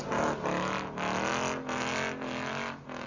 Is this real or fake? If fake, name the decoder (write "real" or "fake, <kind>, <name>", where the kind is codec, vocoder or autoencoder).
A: real